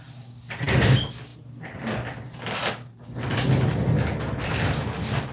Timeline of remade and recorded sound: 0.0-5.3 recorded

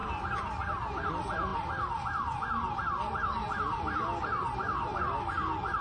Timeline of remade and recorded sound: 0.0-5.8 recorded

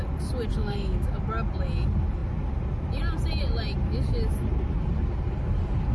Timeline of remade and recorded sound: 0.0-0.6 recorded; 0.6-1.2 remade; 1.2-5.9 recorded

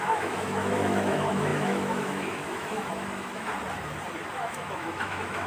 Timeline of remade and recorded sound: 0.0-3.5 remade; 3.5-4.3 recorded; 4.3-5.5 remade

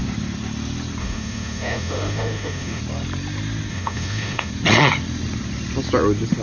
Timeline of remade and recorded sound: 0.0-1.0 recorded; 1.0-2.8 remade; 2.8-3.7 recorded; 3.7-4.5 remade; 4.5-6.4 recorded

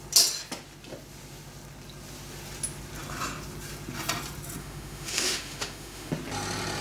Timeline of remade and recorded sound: 0.0-4.6 recorded; 4.6-6.1 remade; 6.1-6.8 recorded

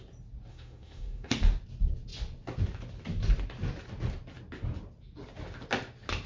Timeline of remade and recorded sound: 0.0-0.5 recorded; 0.5-1.3 remade; 1.3-6.3 recorded

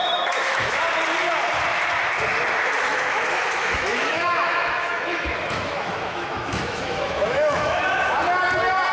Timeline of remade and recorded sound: 0.0-0.8 remade; 0.8-2.9 recorded; 2.9-7.8 remade; 7.8-8.9 recorded